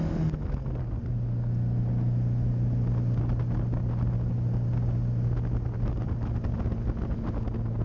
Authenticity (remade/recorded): recorded